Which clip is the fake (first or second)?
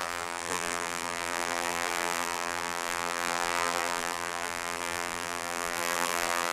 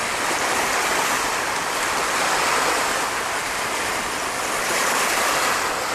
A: first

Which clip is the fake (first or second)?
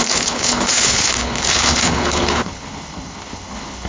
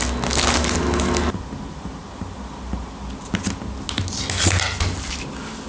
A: first